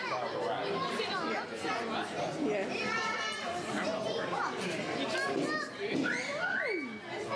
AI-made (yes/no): no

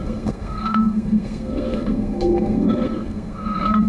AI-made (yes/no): yes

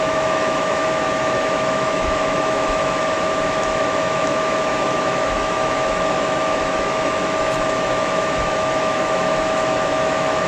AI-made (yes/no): yes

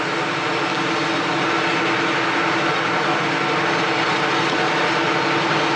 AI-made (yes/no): no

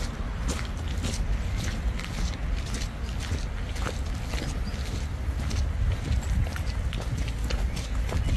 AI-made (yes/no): no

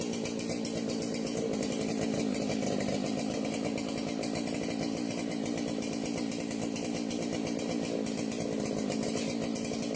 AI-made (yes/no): no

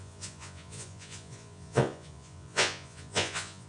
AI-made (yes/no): yes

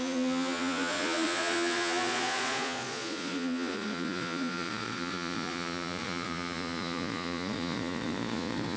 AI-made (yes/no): yes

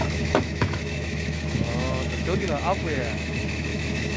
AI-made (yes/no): yes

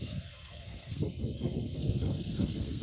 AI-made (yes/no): yes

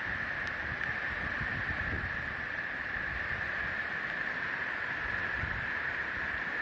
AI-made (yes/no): yes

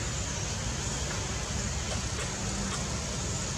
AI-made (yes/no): no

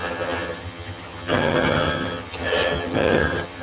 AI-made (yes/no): yes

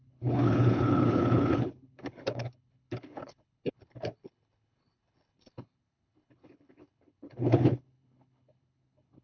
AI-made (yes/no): yes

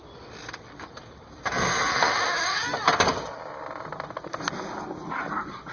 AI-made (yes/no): no